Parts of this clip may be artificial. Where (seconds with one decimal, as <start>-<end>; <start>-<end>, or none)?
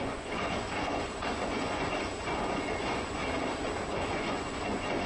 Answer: 0.0-3.2; 3.9-5.1